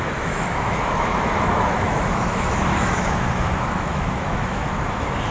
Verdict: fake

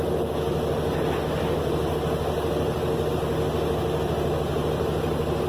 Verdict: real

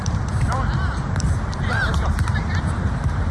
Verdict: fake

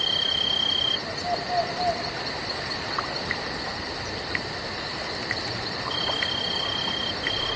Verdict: fake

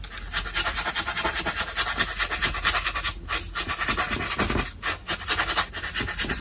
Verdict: real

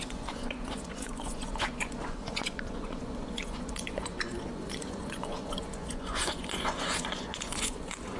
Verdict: fake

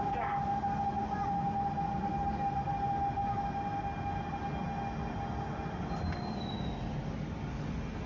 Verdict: real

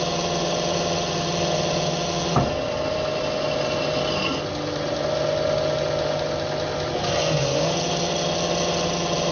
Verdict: real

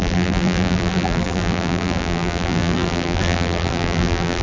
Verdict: fake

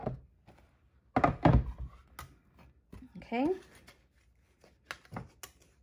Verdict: real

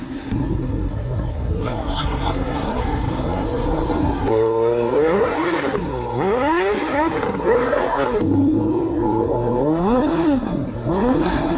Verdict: fake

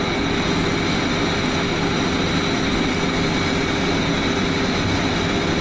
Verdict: real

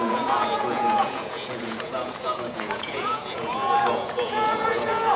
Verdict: fake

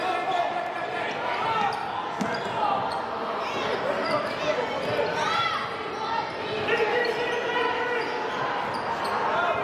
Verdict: real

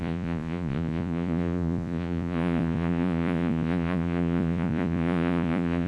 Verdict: fake